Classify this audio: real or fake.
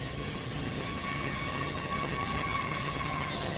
fake